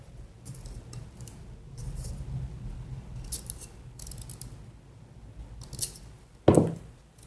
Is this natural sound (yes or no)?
yes